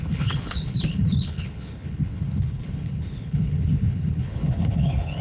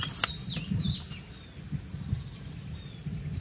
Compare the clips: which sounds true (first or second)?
second